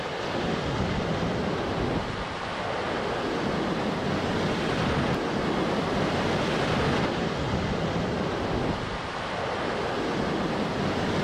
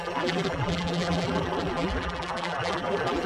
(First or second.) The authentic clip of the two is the first